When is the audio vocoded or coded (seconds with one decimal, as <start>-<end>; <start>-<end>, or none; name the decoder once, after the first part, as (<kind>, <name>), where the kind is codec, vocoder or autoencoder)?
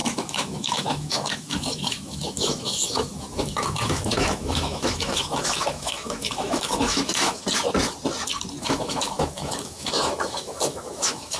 0.0-7.4 (autoencoder, DAC-VAE); 8.6-11.4